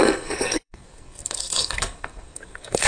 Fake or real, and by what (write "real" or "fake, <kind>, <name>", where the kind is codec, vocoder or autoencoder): fake, codec, SNAC